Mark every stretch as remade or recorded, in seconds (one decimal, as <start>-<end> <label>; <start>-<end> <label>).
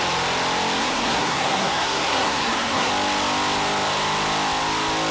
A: 0.0-0.8 recorded; 0.8-2.9 remade; 2.9-5.1 recorded